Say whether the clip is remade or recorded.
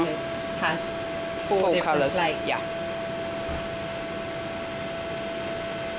recorded